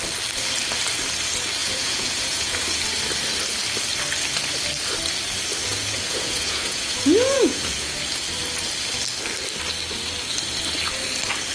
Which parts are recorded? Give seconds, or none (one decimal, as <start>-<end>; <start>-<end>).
0.0-1.6; 2.8-5.7; 8.0-11.5